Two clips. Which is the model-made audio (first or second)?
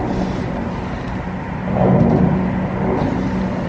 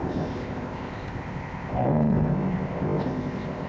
second